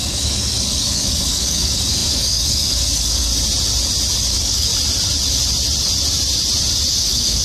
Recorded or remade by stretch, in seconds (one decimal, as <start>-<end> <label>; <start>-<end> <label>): 0.0-3.3 remade; 3.3-4.3 recorded; 4.3-4.7 remade; 4.7-6.9 recorded; 6.9-7.4 remade